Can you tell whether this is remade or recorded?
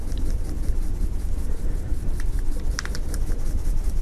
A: recorded